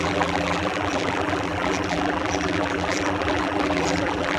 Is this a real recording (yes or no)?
no